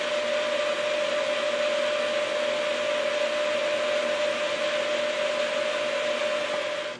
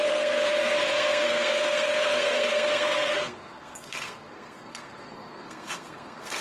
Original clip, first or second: first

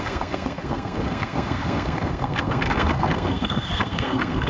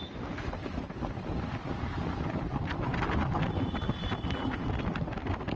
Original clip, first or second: second